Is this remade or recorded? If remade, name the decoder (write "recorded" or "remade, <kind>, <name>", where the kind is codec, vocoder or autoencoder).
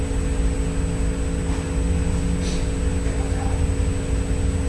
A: recorded